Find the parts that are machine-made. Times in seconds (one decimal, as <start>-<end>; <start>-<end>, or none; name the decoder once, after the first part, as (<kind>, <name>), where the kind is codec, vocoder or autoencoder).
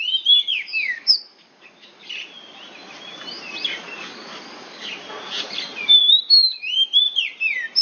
0.5-2.1 (codec, DAC); 3.8-4.9